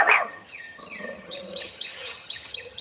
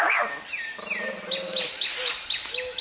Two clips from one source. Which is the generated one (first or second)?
first